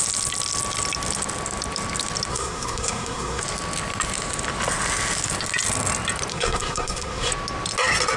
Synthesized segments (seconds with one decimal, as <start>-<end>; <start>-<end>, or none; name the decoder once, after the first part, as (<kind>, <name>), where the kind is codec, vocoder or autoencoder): 2.3-3.4 (codec, SNAC); 6.3-7.3